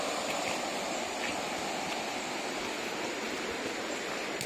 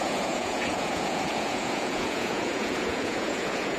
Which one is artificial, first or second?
second